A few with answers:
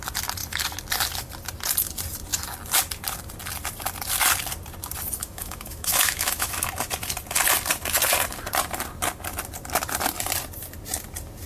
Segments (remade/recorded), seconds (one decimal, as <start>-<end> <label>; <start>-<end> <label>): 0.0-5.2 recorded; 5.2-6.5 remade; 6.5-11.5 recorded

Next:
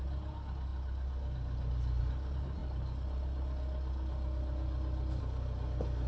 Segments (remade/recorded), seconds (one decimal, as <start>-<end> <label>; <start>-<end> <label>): 0.0-6.1 recorded

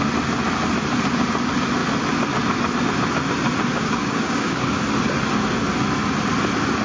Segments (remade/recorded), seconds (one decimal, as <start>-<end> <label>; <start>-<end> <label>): 0.0-3.7 recorded; 3.7-4.8 remade; 4.8-6.8 recorded